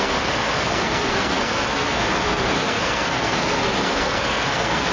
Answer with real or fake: fake